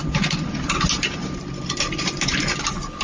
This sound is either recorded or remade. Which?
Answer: recorded